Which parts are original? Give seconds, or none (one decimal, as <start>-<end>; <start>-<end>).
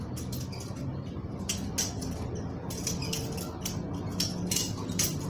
0.0-5.3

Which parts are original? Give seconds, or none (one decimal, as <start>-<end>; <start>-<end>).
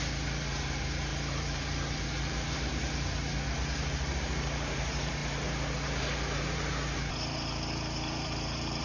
none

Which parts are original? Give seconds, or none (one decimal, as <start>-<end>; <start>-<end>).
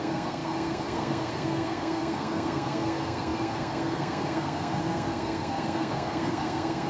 none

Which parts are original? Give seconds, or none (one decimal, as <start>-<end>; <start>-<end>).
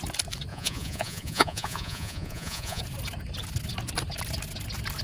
0.0-0.5; 2.8-5.0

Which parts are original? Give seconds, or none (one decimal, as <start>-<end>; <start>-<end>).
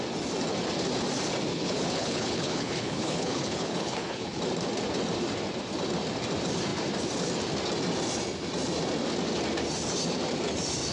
0.0-1.5; 4.4-10.9